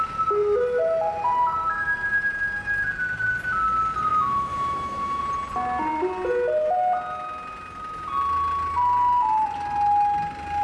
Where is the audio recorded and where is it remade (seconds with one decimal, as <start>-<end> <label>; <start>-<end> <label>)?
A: 0.0-4.1 recorded; 4.1-5.2 remade; 5.2-10.6 recorded